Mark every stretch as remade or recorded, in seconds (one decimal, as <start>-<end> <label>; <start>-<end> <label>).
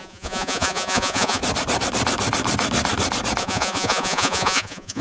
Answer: 0.0-1.4 remade; 1.4-3.4 recorded; 3.4-5.0 remade